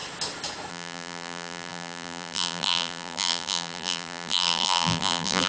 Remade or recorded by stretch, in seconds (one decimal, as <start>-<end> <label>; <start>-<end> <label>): 0.0-0.7 recorded; 0.7-5.5 remade